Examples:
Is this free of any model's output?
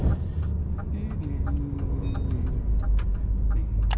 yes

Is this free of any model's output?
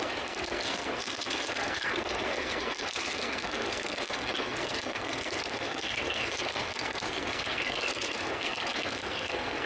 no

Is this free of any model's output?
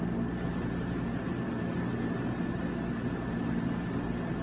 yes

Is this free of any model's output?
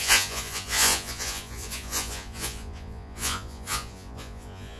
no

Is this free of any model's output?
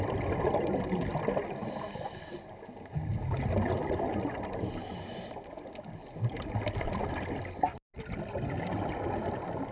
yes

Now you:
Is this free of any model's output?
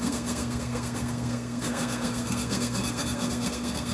no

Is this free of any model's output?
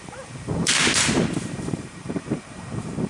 no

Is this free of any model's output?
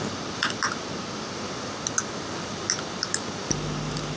yes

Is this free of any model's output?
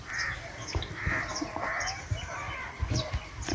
no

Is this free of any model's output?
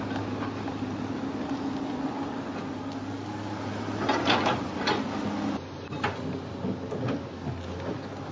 yes